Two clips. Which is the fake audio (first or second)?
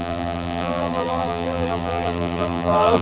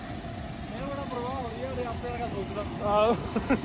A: first